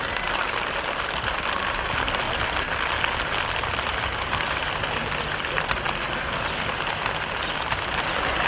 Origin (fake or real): real